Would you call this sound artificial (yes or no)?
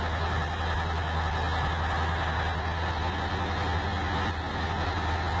no